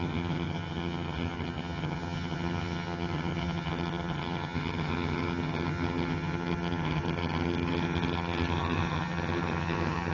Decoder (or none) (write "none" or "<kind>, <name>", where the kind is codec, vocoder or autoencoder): vocoder, HiFi-GAN